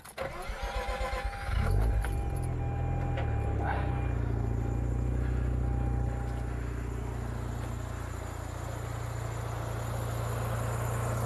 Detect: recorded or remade recorded